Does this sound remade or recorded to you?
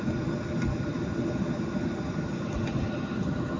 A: recorded